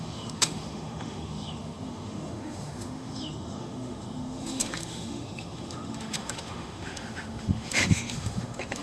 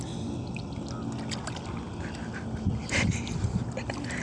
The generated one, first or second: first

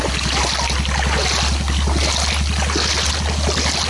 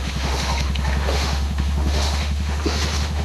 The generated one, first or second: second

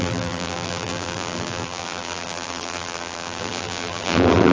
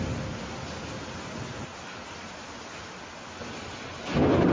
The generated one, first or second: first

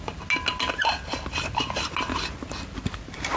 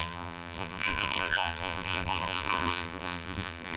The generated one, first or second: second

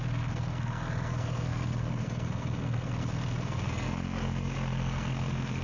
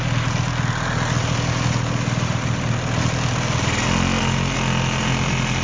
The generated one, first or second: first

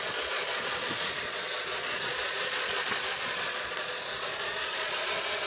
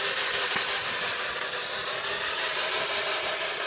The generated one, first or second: first